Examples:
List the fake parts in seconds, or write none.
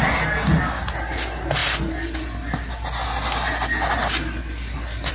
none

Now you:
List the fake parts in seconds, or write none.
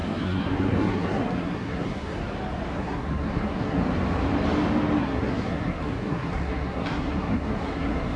0.0-2.2 (codec, SNAC); 2.7-3.8; 5.0-8.2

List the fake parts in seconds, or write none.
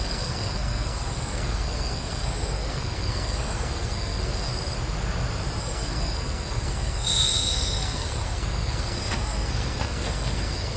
0.0-4.5 (codec, SNAC); 5.6-10.8